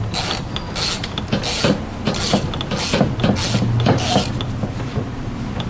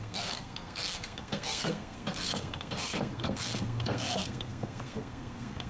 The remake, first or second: second